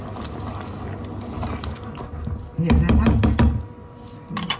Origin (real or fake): real